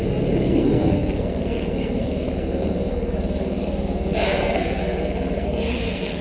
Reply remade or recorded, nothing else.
remade